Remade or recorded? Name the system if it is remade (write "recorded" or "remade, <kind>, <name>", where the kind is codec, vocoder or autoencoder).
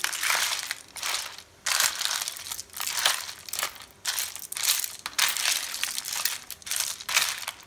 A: recorded